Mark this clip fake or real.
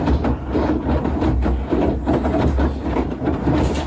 real